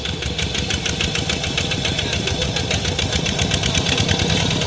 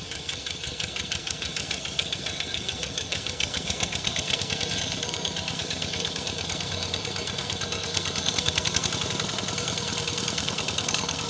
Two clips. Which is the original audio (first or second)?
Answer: first